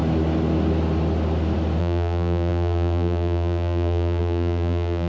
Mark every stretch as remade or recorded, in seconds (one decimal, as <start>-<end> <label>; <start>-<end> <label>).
0.0-1.8 recorded; 1.8-5.1 remade